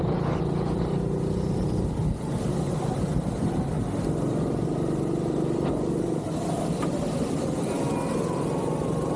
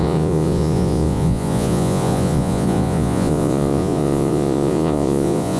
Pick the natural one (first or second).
first